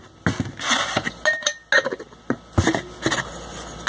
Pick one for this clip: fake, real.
real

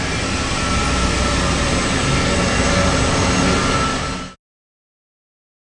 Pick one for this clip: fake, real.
real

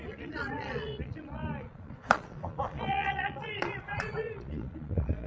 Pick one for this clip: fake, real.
fake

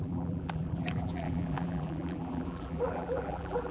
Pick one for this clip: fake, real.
fake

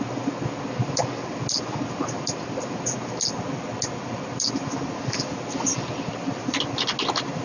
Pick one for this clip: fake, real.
real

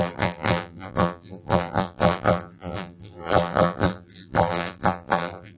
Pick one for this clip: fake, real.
fake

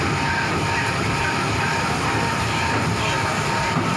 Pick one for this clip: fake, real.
real